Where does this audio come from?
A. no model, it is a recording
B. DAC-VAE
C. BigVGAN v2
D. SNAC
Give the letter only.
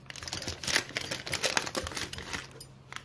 A